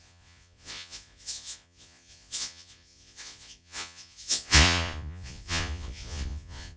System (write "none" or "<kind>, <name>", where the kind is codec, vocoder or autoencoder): vocoder, Vocos